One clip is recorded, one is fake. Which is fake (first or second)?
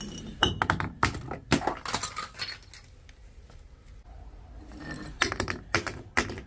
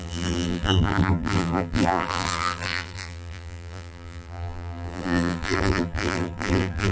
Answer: second